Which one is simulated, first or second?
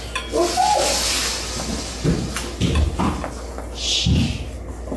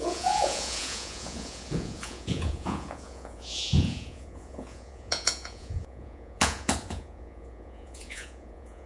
second